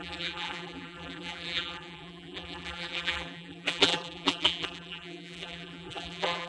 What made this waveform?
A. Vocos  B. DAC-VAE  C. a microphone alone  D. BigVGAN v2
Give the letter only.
D